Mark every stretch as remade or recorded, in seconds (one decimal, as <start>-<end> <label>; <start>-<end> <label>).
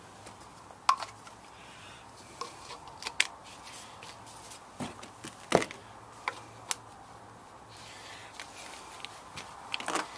0.0-10.2 recorded